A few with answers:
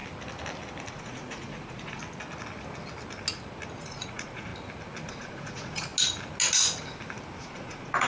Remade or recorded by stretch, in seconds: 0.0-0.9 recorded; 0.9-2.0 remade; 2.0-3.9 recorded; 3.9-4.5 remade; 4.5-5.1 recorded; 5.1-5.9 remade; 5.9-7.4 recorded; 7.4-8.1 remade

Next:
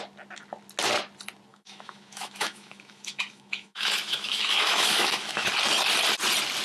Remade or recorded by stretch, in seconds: 0.0-1.5 recorded; 1.5-5.5 remade; 5.5-6.6 recorded